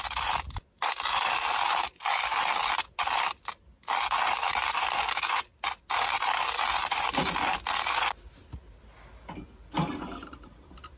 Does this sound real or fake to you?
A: real